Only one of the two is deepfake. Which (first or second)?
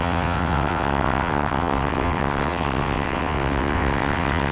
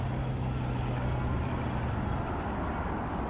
first